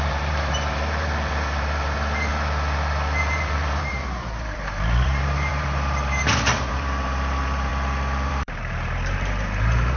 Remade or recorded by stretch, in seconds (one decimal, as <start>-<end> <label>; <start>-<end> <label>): 0.0-2.3 remade; 2.3-3.2 recorded; 3.2-7.7 remade; 7.7-8.3 recorded; 8.3-10.0 remade